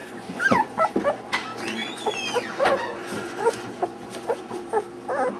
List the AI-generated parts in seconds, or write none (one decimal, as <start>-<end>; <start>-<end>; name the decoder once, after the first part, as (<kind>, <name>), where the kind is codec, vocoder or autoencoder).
0.0-0.9 (vocoder, Vocos); 1.5-4.7